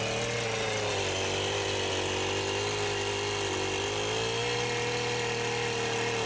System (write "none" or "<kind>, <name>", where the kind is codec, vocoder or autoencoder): none